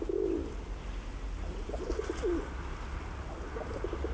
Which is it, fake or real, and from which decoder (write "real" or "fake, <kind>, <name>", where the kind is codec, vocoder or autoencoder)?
real